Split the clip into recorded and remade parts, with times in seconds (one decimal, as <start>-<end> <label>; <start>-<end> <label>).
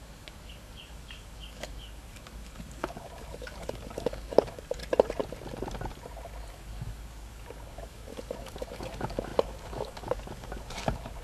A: 0.0-4.8 remade; 4.8-6.5 recorded; 6.5-11.2 remade